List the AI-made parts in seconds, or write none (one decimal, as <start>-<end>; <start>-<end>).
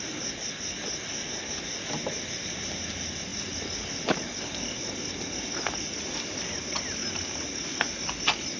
none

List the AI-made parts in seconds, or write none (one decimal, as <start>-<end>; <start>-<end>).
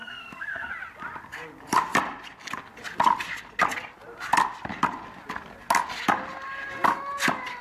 0.0-0.7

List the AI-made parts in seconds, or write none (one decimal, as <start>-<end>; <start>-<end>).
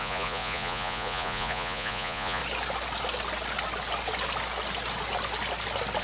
0.0-2.4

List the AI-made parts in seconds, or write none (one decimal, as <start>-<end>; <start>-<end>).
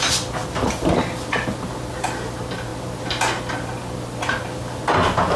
none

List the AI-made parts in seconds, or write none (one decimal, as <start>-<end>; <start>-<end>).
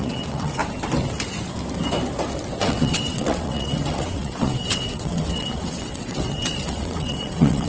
0.0-0.6; 2.6-7.7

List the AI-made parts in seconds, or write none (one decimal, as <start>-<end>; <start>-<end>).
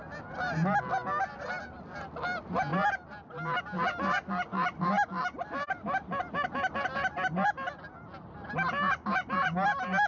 none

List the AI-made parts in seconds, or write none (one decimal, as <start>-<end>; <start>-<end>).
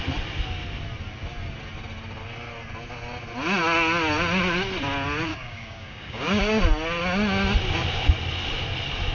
5.3-6.4